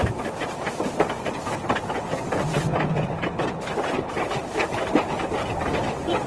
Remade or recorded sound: recorded